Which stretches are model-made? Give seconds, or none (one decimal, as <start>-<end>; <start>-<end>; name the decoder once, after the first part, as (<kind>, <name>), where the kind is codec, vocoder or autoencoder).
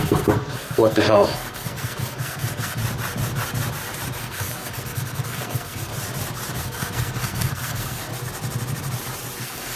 0.0-2.8 (codec, SNAC); 4.2-5.9; 6.6-8.1; 9.4-9.8